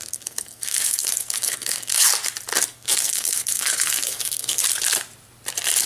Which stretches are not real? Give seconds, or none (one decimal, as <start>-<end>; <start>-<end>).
0.0-2.0; 2.7-4.6